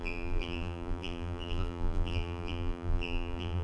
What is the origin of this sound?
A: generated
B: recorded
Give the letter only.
A